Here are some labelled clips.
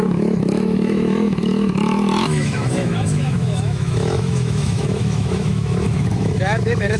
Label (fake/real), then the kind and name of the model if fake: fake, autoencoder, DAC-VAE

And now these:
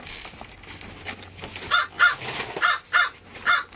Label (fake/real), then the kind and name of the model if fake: real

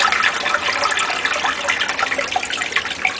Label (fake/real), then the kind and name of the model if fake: real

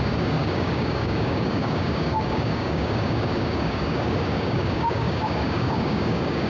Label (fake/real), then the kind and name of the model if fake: fake, codec, DAC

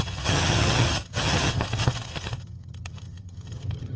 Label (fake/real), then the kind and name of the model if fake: fake, vocoder, HiFi-GAN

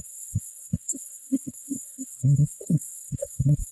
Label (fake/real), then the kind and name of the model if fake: fake, codec, SNAC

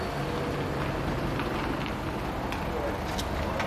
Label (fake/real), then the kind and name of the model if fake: real